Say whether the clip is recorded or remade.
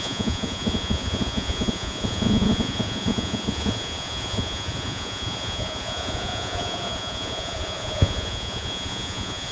remade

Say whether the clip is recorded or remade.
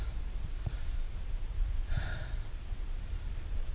remade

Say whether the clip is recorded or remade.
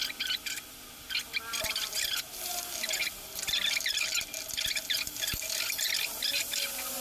recorded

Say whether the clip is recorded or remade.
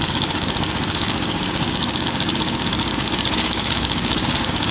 remade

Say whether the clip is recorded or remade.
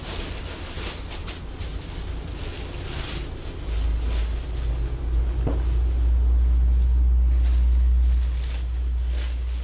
recorded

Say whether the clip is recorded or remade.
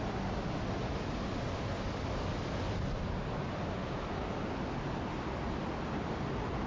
recorded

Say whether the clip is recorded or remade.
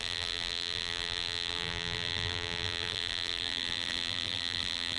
remade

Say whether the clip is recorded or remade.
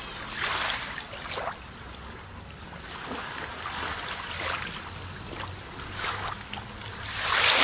recorded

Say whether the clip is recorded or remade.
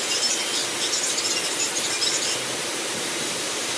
recorded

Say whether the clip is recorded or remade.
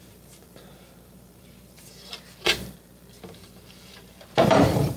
remade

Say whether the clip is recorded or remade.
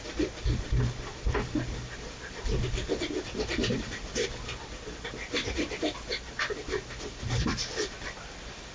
recorded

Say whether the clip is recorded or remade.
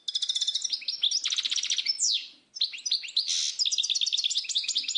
recorded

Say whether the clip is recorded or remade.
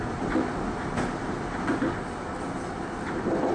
recorded